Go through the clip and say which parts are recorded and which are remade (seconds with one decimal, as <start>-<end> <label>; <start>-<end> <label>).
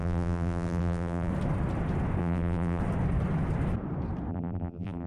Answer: 0.0-1.3 remade; 1.3-2.2 recorded; 2.2-2.8 remade; 2.8-4.3 recorded; 4.3-5.1 remade